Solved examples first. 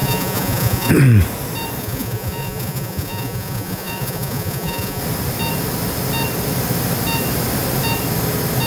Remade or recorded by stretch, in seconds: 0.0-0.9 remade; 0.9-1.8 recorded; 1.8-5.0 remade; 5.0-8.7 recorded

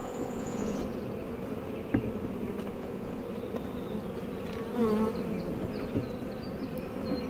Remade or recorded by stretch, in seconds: 0.0-0.8 remade; 0.8-2.7 recorded; 2.7-3.2 remade; 3.2-7.3 recorded

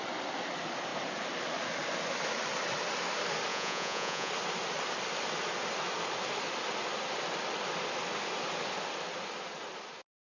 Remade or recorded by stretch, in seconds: 0.0-3.5 recorded; 3.5-4.3 remade; 4.3-10.2 recorded

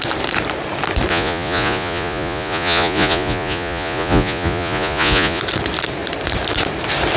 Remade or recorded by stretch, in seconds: 0.0-1.1 recorded; 1.1-5.4 remade; 5.4-7.2 recorded

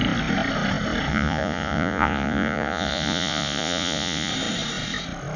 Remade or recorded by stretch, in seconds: 0.0-1.1 recorded; 1.1-4.3 remade; 4.3-5.4 recorded

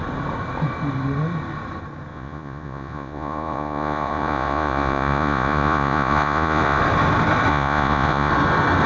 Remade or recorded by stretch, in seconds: 0.0-2.1 recorded; 2.1-6.8 remade; 6.8-7.5 recorded; 7.5-8.3 remade; 8.3-8.9 recorded

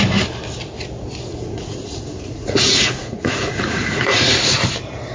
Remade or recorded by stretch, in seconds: 0.0-1.3 recorded; 1.3-4.4 remade; 4.4-5.1 recorded

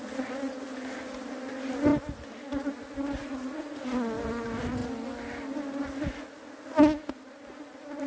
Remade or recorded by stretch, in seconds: 0.0-3.2 recorded; 3.2-3.8 remade; 3.8-8.1 recorded